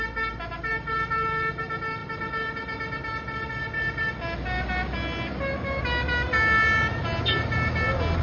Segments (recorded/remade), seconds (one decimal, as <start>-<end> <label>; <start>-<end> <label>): 0.0-8.2 recorded